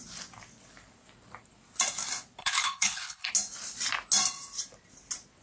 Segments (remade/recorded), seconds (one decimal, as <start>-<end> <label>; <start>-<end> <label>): 0.0-2.4 recorded; 2.4-3.3 remade; 3.3-5.4 recorded